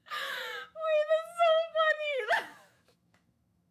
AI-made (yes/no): yes